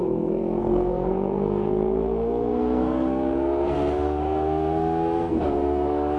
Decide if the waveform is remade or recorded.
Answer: remade